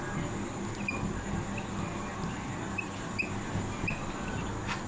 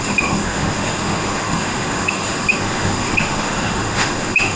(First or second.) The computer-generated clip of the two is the second